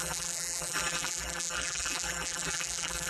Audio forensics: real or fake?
fake